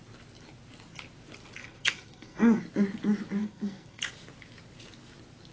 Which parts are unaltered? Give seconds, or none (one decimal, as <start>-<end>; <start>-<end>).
0.0-1.6; 2.6-3.4; 4.0-5.5